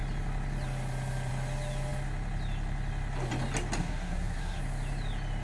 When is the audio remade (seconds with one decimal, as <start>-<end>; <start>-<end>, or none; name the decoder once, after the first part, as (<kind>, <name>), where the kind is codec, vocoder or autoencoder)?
3.8-4.6 (codec, SNAC)